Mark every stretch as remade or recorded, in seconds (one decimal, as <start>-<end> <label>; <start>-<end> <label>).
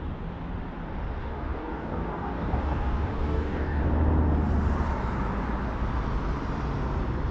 0.0-1.2 recorded; 1.2-3.8 remade; 3.8-7.3 recorded